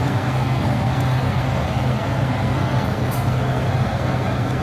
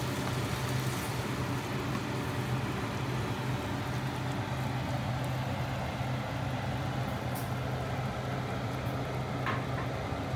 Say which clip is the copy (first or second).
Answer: first